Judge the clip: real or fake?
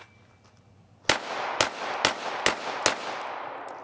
real